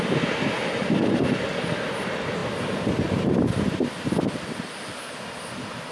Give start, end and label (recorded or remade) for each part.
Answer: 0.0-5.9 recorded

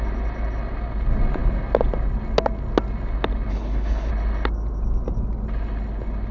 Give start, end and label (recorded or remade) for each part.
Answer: 0.0-3.5 recorded; 3.5-4.1 remade; 4.1-6.3 recorded

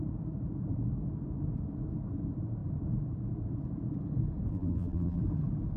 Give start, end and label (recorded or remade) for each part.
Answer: 0.0-4.5 recorded; 4.5-5.2 remade; 5.2-5.8 recorded

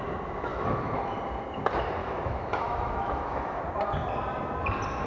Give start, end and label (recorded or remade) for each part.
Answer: 0.0-0.5 recorded; 0.5-1.2 remade; 1.2-2.0 recorded; 2.0-3.6 remade; 3.6-5.1 recorded

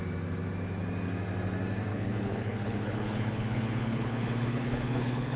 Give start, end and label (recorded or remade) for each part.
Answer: 0.0-1.9 recorded; 1.9-5.4 remade

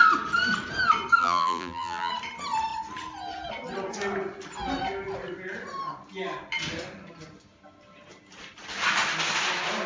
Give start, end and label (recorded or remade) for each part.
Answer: 0.0-1.2 recorded; 1.2-2.1 remade; 2.1-9.9 recorded